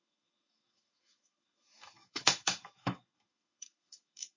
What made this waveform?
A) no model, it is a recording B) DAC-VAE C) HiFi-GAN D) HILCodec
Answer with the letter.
B